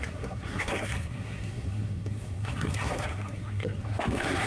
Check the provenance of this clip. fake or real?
fake